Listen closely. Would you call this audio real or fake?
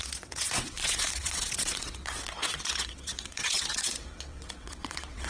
fake